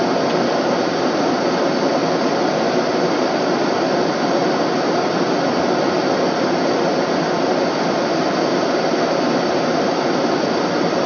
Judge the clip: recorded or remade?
recorded